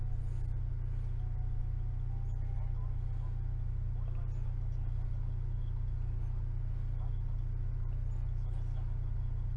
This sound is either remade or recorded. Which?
recorded